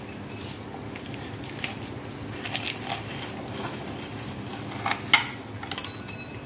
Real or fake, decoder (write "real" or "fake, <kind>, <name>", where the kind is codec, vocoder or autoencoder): real